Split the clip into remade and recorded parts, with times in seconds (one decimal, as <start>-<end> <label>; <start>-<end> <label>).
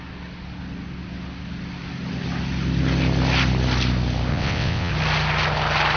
0.0-4.3 recorded; 4.3-4.9 remade; 4.9-6.0 recorded